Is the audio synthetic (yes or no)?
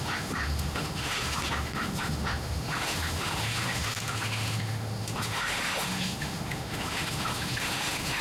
yes